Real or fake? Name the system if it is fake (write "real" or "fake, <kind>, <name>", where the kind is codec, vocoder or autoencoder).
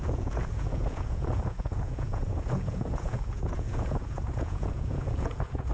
fake, vocoder, Vocos